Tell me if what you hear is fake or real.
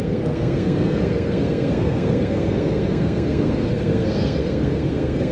fake